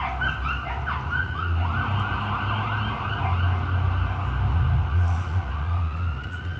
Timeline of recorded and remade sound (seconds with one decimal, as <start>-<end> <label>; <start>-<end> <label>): 0.0-1.2 recorded; 1.2-1.7 remade; 1.7-4.5 recorded; 4.5-6.6 remade